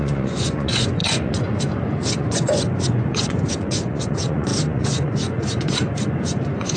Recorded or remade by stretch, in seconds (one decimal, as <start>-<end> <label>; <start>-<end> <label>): 0.0-6.8 remade